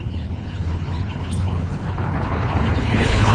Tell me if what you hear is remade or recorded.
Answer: remade